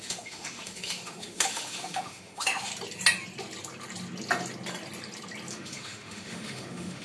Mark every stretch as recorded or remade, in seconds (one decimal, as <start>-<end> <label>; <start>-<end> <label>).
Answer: 0.0-2.7 remade; 2.7-5.5 recorded; 5.5-7.0 remade